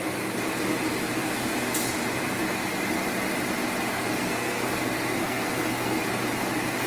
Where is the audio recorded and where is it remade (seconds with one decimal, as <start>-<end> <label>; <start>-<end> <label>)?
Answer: 0.0-3.9 recorded; 3.9-6.0 remade; 6.0-6.9 recorded